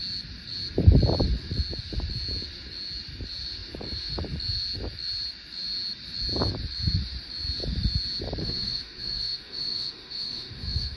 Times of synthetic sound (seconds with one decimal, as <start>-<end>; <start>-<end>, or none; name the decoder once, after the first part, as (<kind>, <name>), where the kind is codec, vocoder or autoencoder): 8.4-11.0 (autoencoder, DAC-VAE)